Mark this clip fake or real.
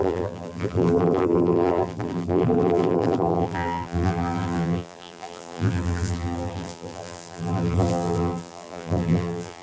fake